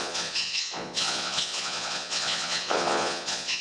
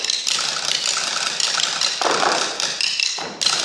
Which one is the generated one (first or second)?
first